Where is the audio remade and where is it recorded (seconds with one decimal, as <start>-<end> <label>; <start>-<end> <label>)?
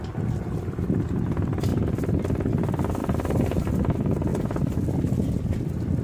0.0-3.0 recorded; 3.0-3.7 remade; 3.7-6.0 recorded